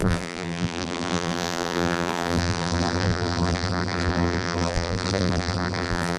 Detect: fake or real fake